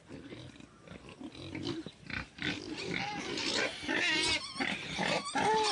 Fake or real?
real